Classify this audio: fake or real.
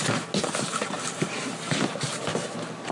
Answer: real